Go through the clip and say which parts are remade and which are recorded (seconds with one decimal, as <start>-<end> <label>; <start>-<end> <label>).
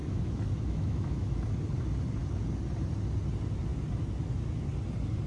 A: 0.0-1.5 remade; 1.5-5.3 recorded